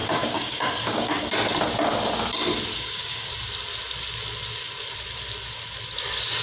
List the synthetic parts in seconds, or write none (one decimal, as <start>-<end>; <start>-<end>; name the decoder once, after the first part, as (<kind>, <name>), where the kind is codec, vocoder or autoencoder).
0.0-1.3 (codec, DAC); 2.7-3.3